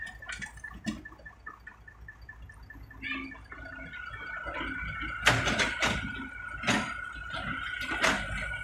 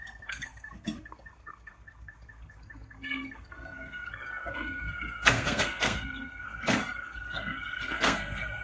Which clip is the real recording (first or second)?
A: first